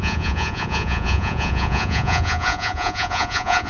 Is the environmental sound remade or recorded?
remade